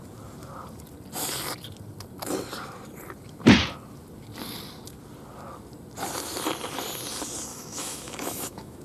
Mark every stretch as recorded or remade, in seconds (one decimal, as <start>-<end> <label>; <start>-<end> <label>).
0.0-7.5 recorded; 7.5-8.8 remade